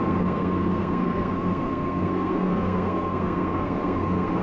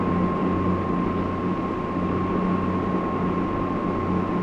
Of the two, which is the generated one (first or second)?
first